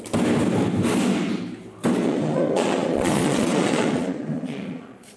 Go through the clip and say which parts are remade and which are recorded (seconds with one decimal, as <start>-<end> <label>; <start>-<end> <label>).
0.0-2.0 recorded; 2.0-5.2 remade